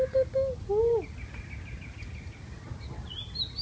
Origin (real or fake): real